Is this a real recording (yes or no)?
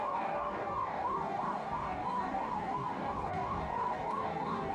no